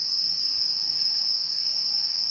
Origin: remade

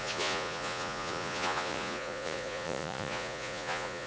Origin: remade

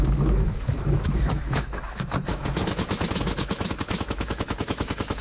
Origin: remade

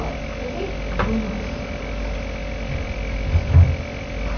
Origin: recorded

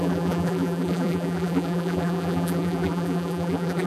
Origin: remade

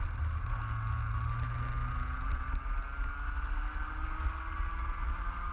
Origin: recorded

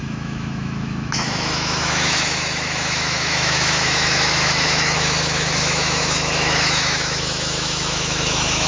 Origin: remade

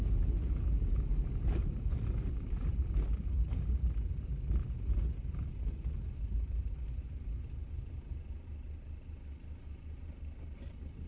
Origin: remade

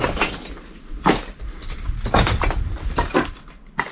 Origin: recorded